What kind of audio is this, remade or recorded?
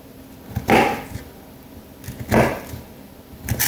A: recorded